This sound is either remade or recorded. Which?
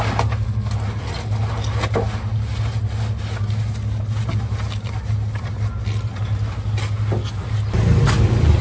recorded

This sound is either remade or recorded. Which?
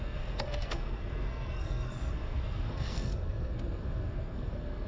remade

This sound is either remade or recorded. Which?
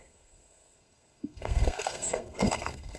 remade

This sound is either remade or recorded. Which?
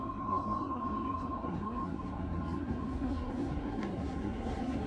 remade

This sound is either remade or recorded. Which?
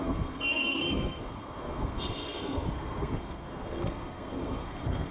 remade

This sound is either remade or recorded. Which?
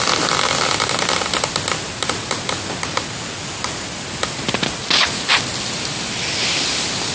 recorded